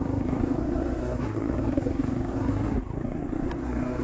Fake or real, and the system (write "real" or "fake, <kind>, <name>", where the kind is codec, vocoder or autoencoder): fake, codec, SNAC